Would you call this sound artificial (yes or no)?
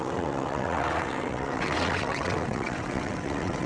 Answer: yes